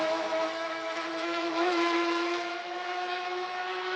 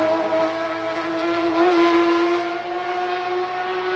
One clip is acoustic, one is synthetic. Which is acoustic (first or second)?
second